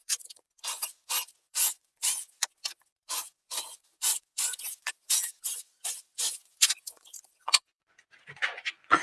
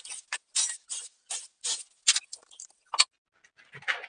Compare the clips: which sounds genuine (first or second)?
second